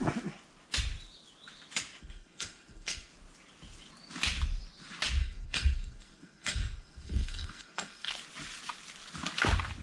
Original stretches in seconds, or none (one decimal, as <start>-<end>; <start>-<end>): 0.0-2.0; 3.1-5.2; 8.1-9.8